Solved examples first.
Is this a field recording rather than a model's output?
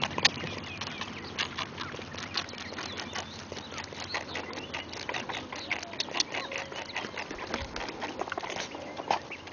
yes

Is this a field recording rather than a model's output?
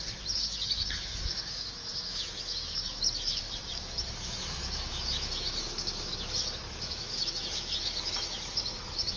no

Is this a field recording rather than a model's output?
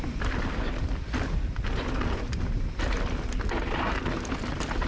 yes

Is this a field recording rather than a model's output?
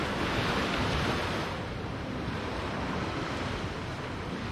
yes